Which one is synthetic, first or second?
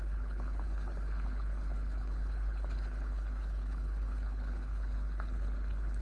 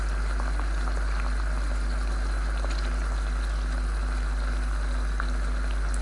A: first